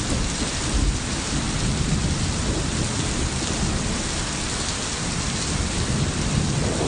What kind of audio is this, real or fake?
real